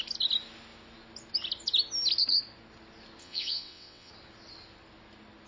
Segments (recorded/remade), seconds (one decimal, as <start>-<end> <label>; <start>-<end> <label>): 0.0-3.2 recorded; 3.2-4.1 remade; 4.1-5.5 recorded